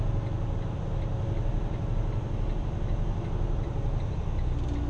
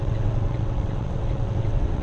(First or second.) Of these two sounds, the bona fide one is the first